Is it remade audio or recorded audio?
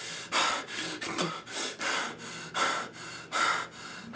recorded